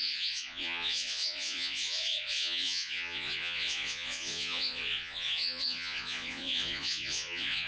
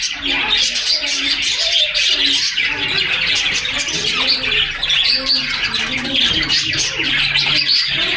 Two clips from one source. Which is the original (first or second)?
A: second